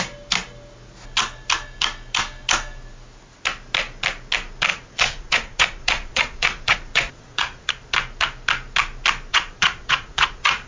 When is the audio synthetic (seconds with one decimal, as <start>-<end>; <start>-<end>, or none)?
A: 4.7-7.7; 9.3-10.7